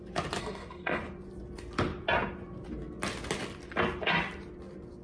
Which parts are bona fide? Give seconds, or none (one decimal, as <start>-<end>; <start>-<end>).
0.0-0.4; 1.0-5.0